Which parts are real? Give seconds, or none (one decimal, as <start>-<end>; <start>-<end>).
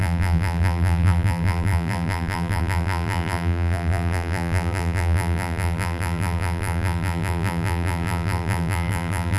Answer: none